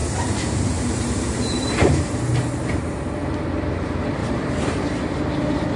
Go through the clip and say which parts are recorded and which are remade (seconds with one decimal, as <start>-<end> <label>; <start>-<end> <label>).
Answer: 0.0-3.2 remade; 3.2-4.2 recorded; 4.2-4.8 remade; 4.8-5.8 recorded